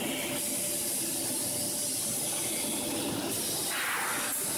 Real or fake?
real